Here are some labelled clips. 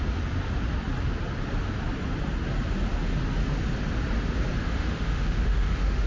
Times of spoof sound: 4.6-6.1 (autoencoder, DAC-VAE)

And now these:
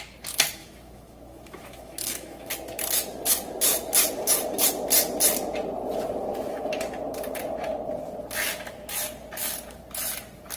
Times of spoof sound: 0.6-2.5 (autoencoder, DAC-VAE)

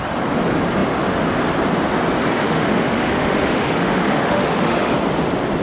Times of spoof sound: 2.4-4.9 (autoencoder, DAC-VAE)